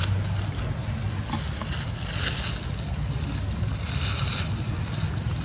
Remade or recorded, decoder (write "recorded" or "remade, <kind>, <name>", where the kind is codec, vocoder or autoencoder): recorded